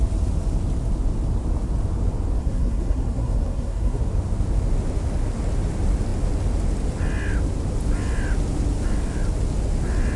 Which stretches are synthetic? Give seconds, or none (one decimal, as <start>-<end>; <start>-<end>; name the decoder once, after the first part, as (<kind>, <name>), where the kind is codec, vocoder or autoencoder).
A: 2.4-4.0 (codec, SNAC)